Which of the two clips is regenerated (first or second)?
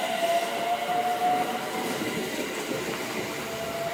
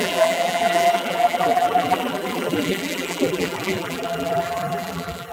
second